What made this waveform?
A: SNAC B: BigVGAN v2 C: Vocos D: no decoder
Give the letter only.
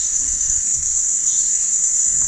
A